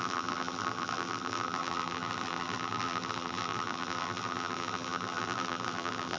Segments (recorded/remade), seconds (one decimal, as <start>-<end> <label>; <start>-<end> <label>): 0.0-6.2 remade